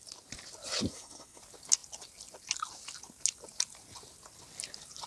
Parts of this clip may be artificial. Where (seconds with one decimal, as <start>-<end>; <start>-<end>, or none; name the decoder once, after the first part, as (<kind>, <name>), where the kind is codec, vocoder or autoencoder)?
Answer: 0.9-1.4 (codec, SNAC)